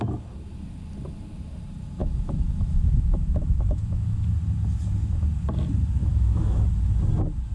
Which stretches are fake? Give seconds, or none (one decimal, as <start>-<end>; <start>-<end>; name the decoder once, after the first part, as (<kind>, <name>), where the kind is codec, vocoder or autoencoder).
2.0-4.3 (autoencoder, DAC-VAE); 6.0-6.6